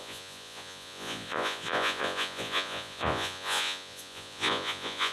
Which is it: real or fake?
fake